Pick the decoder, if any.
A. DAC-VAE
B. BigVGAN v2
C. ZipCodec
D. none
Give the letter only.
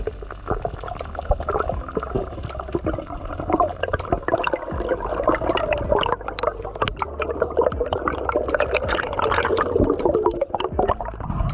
D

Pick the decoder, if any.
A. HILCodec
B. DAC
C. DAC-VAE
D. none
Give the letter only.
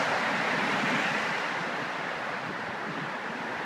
D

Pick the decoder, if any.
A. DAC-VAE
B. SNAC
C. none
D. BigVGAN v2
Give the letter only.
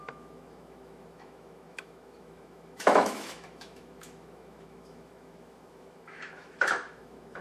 A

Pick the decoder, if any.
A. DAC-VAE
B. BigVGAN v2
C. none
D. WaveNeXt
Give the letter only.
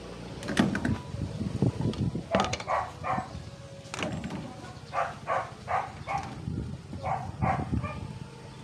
C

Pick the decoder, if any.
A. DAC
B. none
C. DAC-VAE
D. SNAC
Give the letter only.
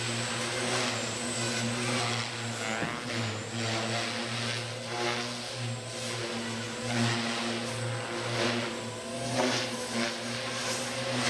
B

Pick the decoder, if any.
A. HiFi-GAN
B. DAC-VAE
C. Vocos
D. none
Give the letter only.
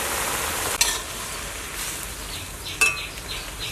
D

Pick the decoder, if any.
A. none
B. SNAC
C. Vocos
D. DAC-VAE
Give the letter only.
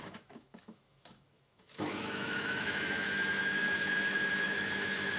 D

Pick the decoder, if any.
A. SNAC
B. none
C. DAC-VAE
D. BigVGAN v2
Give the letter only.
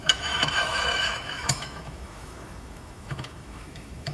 C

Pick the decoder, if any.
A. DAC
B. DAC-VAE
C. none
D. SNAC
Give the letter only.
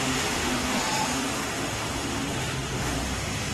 B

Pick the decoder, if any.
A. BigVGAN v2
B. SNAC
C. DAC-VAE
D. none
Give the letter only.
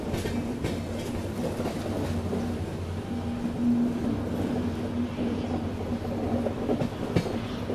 D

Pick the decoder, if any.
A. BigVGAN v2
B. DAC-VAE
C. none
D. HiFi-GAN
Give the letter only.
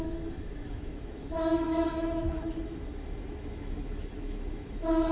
B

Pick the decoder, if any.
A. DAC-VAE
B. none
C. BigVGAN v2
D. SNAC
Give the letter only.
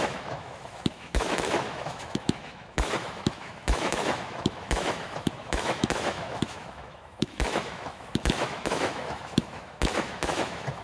A